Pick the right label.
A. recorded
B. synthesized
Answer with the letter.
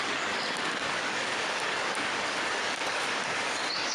B